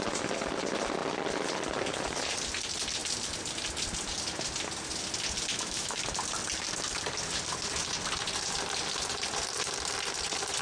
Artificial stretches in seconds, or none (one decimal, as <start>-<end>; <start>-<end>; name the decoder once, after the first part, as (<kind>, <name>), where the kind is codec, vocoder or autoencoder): 5.5-6.0 (autoencoder, DAC-VAE)